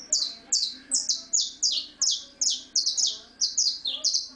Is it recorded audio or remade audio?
recorded